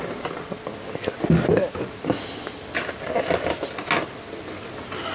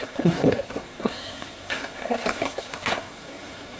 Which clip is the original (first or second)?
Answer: first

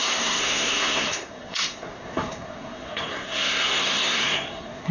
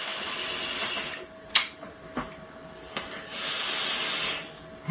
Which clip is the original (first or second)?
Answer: second